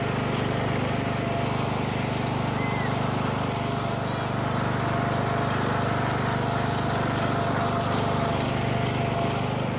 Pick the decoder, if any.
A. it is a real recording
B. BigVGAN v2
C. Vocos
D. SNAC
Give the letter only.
A